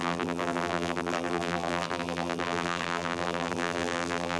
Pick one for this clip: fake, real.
fake